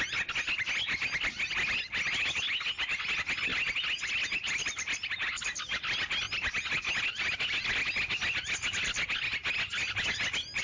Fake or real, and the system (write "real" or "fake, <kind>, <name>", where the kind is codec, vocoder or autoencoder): real